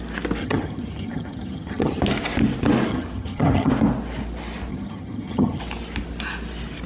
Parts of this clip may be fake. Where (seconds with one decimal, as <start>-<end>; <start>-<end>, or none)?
0.4-2.0; 2.9-3.7; 4.7-5.6